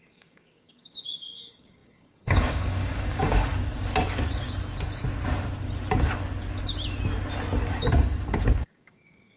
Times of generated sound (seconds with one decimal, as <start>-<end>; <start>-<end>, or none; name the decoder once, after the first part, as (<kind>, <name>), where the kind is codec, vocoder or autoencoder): 0.0-3.5 (codec, DAC); 8.6-9.4